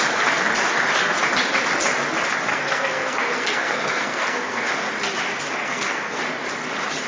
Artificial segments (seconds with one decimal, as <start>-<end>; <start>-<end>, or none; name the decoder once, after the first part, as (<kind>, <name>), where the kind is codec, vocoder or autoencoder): 2.5-4.7 (codec, SNAC); 5.6-6.2

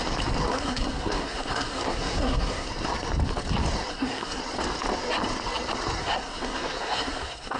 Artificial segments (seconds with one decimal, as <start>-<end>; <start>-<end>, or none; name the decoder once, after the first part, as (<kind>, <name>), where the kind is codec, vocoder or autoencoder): 0.5-2.7 (codec, SNAC); 3.9-4.4; 6.0-7.6